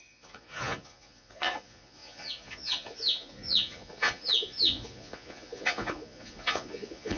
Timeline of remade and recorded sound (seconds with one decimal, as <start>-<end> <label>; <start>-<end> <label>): 0.0-7.2 remade